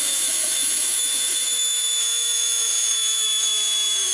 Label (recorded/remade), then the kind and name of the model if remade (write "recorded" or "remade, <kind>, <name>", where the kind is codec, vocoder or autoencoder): remade, autoencoder, DAC-VAE